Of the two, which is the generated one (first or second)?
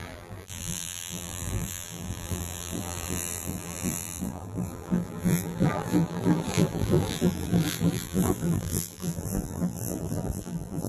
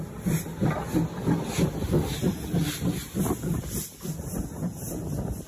first